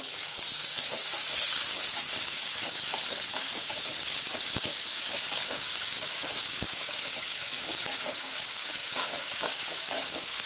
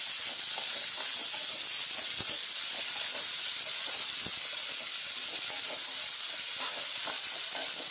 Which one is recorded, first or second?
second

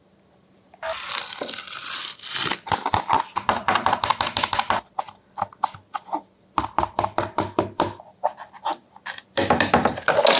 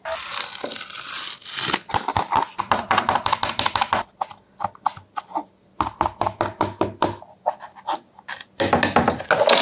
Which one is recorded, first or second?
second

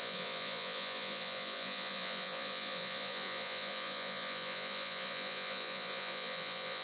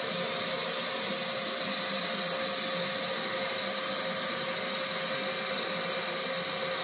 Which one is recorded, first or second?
second